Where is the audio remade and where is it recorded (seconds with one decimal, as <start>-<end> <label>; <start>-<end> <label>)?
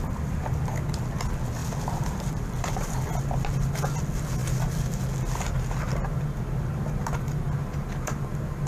0.0-8.7 recorded